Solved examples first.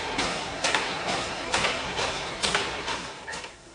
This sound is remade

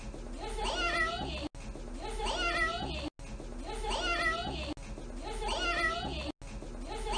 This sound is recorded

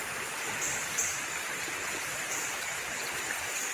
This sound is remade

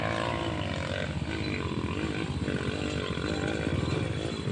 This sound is recorded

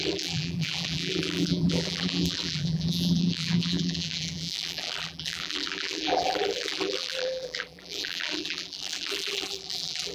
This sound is remade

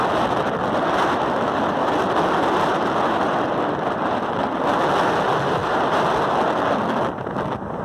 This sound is recorded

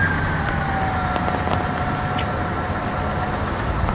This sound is recorded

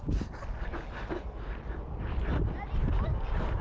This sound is recorded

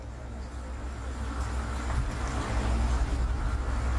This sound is recorded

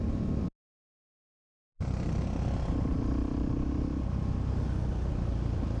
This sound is recorded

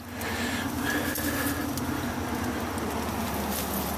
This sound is recorded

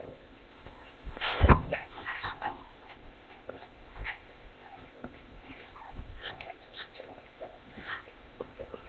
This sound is remade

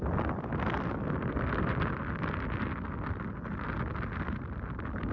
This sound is recorded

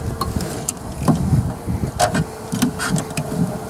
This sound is recorded